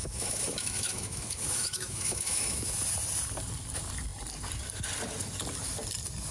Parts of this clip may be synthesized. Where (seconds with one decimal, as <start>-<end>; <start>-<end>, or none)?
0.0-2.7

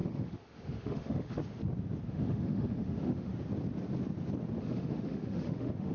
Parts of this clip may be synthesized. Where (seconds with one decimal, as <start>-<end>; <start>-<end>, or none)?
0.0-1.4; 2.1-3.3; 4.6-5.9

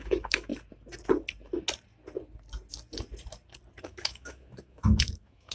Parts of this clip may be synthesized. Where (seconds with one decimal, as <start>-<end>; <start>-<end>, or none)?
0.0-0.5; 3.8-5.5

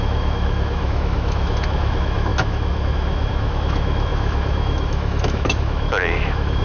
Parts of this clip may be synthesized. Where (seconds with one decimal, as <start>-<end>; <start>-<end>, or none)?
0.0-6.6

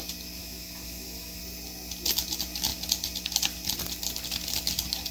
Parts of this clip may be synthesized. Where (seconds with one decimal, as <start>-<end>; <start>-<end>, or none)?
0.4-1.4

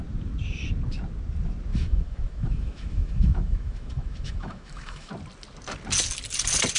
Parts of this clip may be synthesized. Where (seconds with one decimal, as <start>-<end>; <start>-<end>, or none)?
1.7-5.1

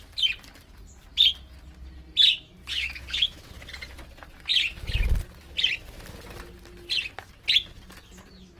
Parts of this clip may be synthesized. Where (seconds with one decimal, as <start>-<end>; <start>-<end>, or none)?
2.7-3.5